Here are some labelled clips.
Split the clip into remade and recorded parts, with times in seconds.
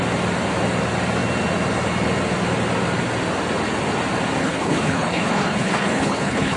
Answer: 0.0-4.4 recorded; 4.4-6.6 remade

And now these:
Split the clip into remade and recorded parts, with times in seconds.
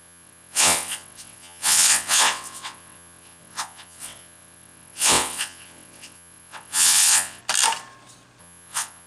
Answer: 0.0-7.4 remade; 7.4-8.4 recorded; 8.4-9.1 remade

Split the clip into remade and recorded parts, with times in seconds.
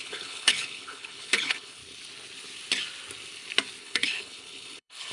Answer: 0.0-1.8 remade; 1.8-3.8 recorded; 3.8-5.1 remade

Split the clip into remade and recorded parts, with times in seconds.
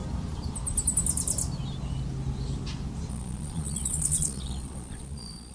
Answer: 0.0-3.1 recorded; 3.1-5.5 remade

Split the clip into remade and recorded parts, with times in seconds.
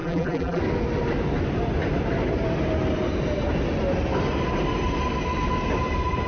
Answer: 0.0-0.6 remade; 0.6-6.3 recorded